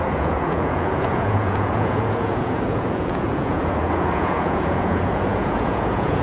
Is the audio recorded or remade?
remade